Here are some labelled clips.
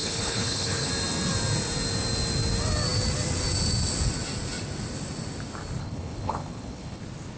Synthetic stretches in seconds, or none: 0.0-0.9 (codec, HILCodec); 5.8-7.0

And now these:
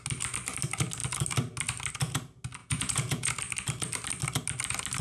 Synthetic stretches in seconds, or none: 2.6-3.3 (vocoder, Vocos)

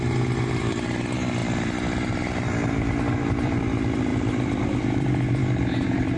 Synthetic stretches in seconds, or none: 1.4-3.6 (vocoder, BigVGAN v2); 4.1-6.2

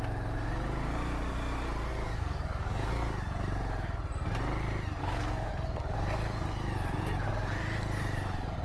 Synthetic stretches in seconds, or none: 1.9-2.9 (codec, DAC); 5.0-5.5

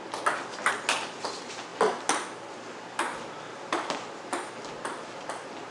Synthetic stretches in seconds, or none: none

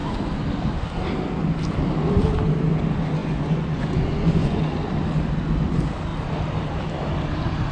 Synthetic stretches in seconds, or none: 3.2-4.7 (vocoder, Vocos)

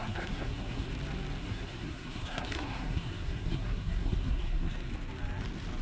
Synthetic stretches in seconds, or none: 0.0-0.9 (codec, SNAC); 1.4-4.9